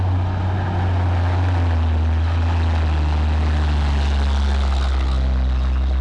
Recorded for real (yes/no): yes